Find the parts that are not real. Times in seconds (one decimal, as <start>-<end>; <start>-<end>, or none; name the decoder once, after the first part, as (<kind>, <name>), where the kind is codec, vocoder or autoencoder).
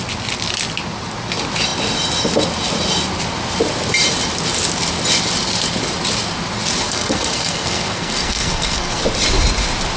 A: 6.8-9.0 (codec, SNAC)